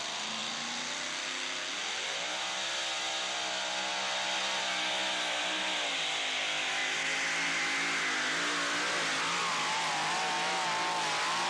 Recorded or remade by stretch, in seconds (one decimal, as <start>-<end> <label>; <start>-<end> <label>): 0.0-11.5 recorded